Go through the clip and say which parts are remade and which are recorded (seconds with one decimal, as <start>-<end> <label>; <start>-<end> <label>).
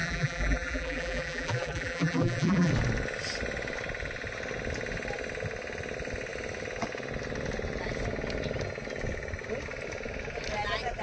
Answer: 0.0-2.7 remade; 2.7-11.0 recorded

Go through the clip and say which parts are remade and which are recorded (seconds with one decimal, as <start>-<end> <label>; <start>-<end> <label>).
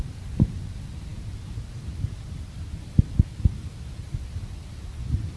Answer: 0.0-5.4 recorded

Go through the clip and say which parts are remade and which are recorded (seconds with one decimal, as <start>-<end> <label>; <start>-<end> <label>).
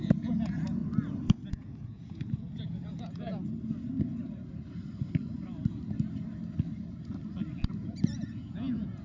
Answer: 0.0-0.8 remade; 0.8-1.5 recorded; 1.5-3.3 remade; 3.3-7.8 recorded; 7.8-9.0 remade